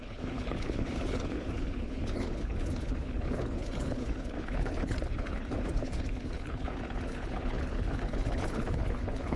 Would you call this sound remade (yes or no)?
yes